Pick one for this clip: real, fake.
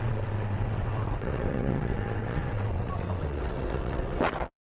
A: fake